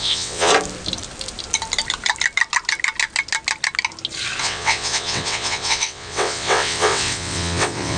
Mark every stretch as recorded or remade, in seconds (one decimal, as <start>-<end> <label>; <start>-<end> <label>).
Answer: 0.0-0.5 remade; 0.5-4.4 recorded; 4.4-8.0 remade